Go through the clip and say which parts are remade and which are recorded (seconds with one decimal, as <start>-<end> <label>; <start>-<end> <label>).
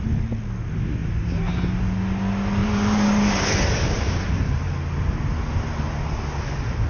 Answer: 0.0-1.0 recorded; 1.0-1.5 remade; 1.5-2.6 recorded; 2.6-4.7 remade; 4.7-6.9 recorded